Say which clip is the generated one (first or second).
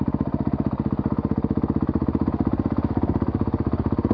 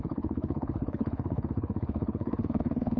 second